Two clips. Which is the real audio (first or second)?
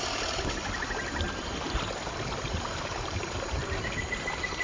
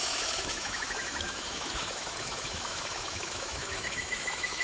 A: first